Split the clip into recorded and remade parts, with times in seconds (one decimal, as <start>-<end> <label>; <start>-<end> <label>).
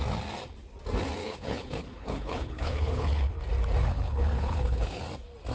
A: 0.0-1.2 recorded; 1.2-3.4 remade; 3.4-3.8 recorded; 3.8-5.0 remade; 5.0-5.5 recorded